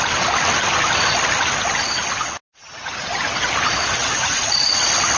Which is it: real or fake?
real